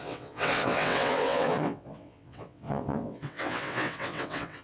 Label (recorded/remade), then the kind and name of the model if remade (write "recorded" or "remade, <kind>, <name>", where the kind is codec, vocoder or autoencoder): remade, vocoder, WaveNeXt